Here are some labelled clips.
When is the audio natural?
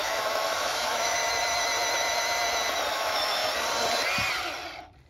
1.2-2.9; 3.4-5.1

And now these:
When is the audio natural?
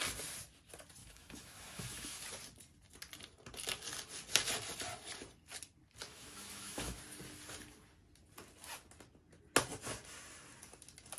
0.0-1.0; 2.2-6.1; 7.0-11.2